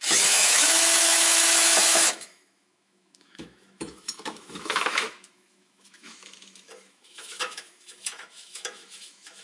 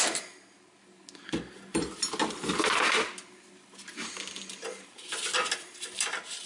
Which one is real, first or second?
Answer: second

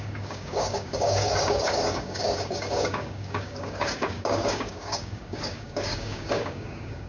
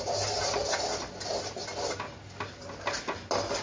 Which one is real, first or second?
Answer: second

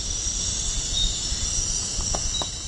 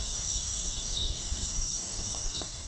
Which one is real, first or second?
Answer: first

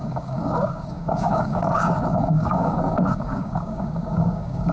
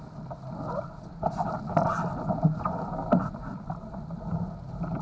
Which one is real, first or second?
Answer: second